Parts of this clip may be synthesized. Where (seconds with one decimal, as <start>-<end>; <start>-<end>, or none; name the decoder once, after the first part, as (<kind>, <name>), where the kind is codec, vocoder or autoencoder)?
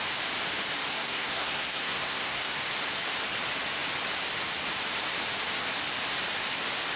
0.9-2.6 (codec, SNAC)